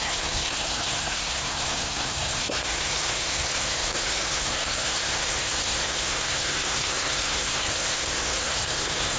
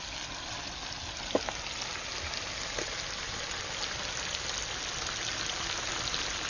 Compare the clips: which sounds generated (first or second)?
first